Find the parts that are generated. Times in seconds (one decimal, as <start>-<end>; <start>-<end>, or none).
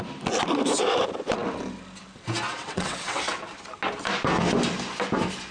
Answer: 2.5-3.4